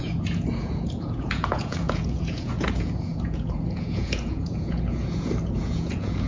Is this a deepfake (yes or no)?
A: yes